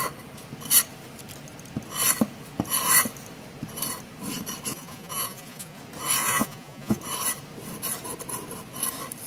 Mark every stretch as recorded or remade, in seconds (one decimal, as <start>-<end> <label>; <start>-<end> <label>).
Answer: 0.0-4.7 recorded; 4.7-5.8 remade; 5.8-6.2 recorded; 6.2-7.0 remade; 7.0-9.3 recorded